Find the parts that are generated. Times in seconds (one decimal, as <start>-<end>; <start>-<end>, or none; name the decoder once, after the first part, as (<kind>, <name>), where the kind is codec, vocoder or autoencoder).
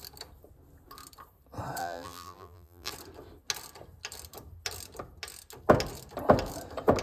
1.8-2.9 (vocoder, BigVGAN v2)